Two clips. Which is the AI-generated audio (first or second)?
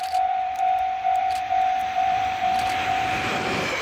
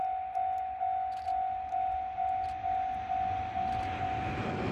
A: first